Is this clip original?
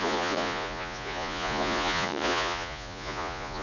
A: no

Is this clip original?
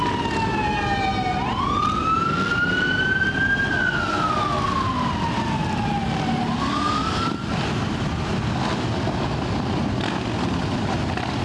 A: yes